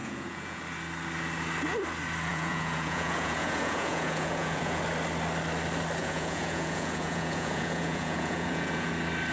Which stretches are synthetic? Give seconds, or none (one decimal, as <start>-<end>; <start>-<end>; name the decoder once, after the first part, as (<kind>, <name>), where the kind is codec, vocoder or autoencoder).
0.0-0.6 (vocoder, Vocos); 2.3-4.8; 6.0-8.9

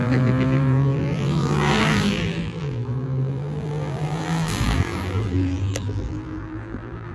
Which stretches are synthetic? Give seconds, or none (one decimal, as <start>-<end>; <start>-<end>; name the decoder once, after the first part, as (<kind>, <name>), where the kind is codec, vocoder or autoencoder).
0.0-7.1 (vocoder, BigVGAN v2)

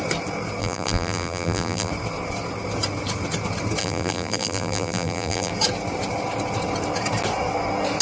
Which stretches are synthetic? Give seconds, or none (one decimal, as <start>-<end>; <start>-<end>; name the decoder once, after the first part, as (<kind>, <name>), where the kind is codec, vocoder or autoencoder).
0.6-1.9 (vocoder, BigVGAN v2); 3.8-5.5

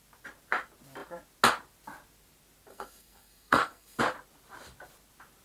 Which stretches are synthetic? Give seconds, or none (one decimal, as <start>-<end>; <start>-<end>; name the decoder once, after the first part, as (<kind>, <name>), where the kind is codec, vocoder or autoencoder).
2.7-4.0 (codec, SNAC)

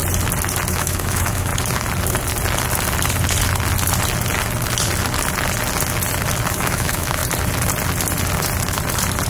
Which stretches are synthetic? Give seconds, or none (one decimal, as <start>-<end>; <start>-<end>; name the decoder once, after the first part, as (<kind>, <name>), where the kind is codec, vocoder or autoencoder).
0.7-1.5 (autoencoder, DAC-VAE); 6.5-7.2

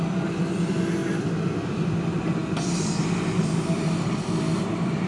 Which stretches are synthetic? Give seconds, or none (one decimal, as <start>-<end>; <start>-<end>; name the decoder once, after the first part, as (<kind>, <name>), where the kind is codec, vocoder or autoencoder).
none